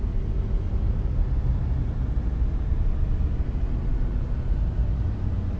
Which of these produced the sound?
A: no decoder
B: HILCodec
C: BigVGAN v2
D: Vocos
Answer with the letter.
A